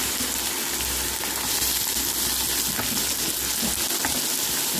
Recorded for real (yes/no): yes